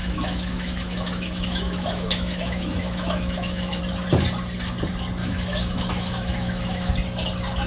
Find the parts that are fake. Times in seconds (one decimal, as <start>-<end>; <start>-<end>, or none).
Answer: 0.0-3.8; 5.2-6.9